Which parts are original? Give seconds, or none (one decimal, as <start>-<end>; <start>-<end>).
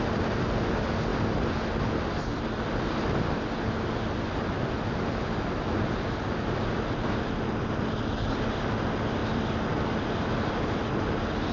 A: 0.0-11.5